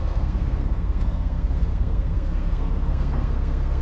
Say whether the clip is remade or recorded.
remade